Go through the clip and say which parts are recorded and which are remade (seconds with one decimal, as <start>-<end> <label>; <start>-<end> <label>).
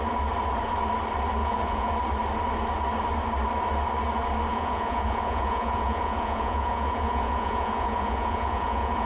0.0-1.4 recorded; 1.4-1.9 remade; 1.9-4.5 recorded; 4.5-9.1 remade